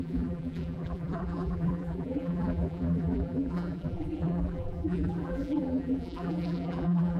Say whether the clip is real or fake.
fake